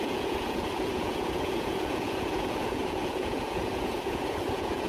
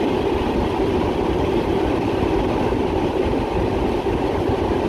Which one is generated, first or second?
first